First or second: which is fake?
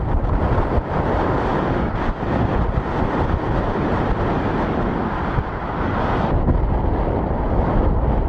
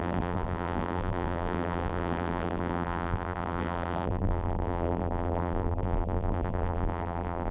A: second